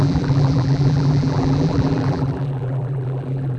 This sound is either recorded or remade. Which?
remade